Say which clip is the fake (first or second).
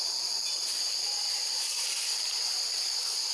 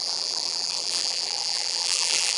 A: second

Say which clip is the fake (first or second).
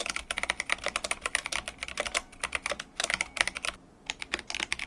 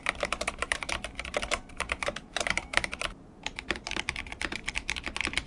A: second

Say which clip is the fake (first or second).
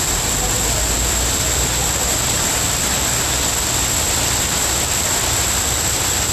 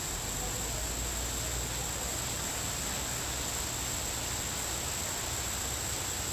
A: first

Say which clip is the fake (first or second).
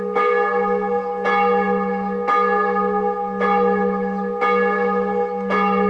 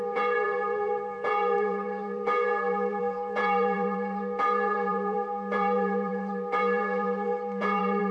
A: second